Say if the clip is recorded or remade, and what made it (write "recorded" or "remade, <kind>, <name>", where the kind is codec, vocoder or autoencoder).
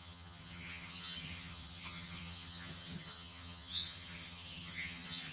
remade, vocoder, HiFi-GAN